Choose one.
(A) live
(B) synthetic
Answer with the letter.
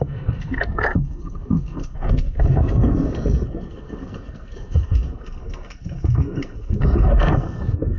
B